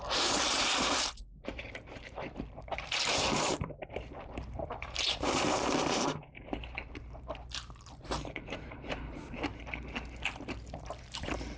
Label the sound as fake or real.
fake